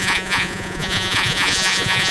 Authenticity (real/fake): fake